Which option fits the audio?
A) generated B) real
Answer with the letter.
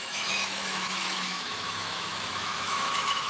A